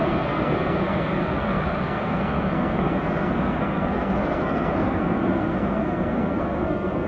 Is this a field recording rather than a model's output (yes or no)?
no